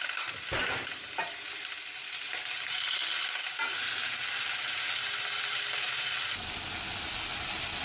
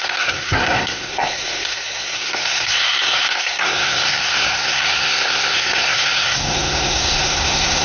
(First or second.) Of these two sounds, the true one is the first